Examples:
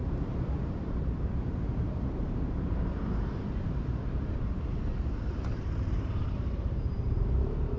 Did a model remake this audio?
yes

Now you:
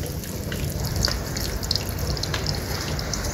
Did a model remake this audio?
no